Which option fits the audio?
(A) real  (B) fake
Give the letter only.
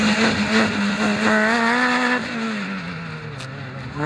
A